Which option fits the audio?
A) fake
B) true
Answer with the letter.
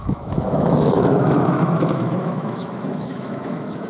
A